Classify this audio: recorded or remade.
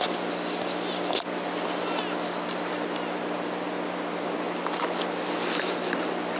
recorded